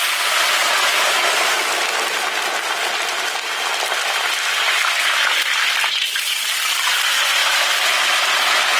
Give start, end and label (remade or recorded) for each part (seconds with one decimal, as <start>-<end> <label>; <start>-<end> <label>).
0.0-8.8 recorded